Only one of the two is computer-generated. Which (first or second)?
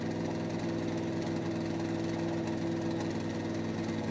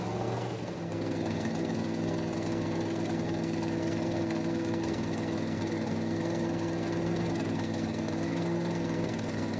second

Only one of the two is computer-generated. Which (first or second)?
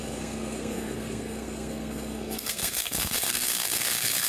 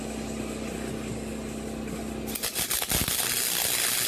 first